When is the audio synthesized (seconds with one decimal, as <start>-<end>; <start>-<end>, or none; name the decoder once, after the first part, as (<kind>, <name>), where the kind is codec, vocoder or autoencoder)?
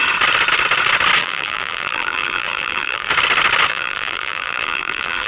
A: 1.2-3.1 (vocoder, BigVGAN v2); 3.7-5.3